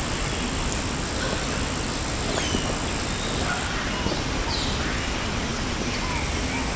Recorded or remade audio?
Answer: recorded